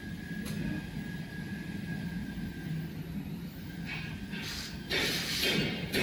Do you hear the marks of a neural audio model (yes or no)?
no